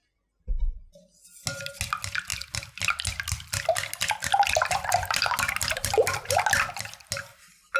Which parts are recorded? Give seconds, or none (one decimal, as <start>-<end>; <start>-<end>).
0.0-7.8